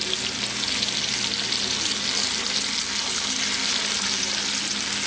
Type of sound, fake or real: real